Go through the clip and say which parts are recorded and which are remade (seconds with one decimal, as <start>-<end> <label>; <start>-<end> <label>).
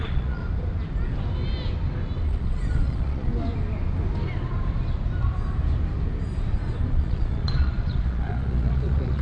0.0-0.4 remade; 0.4-2.2 recorded; 2.2-3.3 remade; 3.3-6.8 recorded; 6.8-9.2 remade